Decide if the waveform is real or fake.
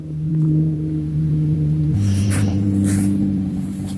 fake